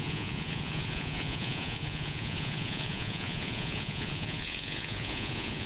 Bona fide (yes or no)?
no